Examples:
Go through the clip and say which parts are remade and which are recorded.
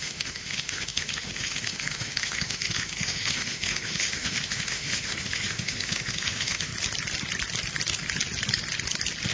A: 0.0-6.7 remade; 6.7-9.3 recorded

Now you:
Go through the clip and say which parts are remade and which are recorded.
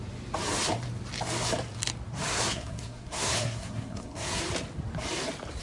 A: 0.0-2.3 recorded; 2.3-4.4 remade; 4.4-5.6 recorded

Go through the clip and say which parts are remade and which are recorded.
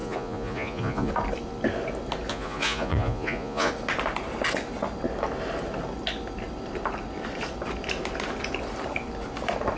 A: 0.0-1.1 remade; 1.1-2.3 recorded; 2.3-3.7 remade; 3.7-9.8 recorded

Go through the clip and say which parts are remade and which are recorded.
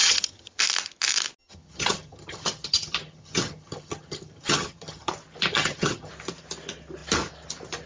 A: 0.0-0.6 remade; 0.6-1.4 recorded; 1.4-5.1 remade; 5.1-5.5 recorded; 5.5-6.1 remade; 6.1-7.9 recorded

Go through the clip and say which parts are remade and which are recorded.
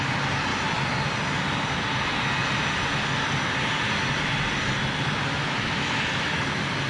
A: 0.0-5.3 recorded; 5.3-6.5 remade; 6.5-6.9 recorded